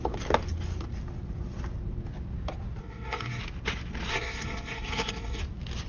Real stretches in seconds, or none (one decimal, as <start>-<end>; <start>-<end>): 0.0-2.8; 3.4-4.1; 5.4-5.9